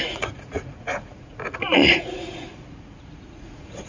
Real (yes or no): no